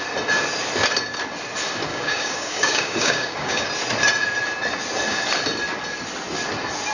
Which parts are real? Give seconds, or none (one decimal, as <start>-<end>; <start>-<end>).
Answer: 0.0-1.9; 3.7-6.9